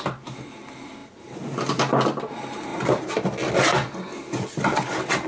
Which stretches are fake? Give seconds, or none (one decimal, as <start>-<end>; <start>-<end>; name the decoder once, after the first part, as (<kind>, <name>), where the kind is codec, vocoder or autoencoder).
none